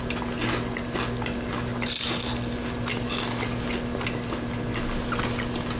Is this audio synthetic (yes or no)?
no